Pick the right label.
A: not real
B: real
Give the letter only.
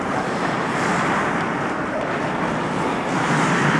B